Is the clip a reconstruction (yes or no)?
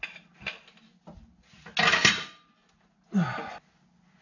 no